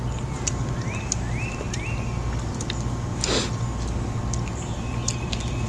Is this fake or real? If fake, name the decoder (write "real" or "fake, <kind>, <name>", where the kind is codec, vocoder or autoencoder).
real